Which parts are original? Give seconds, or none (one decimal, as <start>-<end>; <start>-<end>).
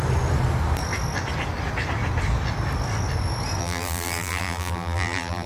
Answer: 0.0-3.6